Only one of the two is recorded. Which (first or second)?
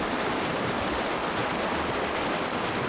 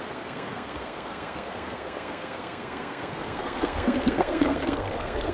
first